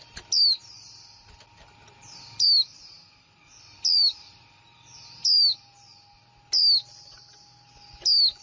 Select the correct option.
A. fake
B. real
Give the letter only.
B